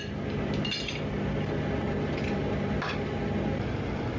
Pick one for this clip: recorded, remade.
recorded